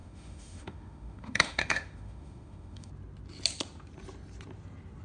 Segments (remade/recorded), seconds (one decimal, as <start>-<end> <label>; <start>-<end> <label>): 0.0-2.9 remade; 2.9-5.0 recorded